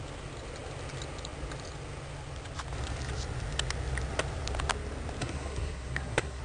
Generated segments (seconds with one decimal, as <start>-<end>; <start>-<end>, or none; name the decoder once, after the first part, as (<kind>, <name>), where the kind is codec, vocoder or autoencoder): 5.2-6.4 (codec, SNAC)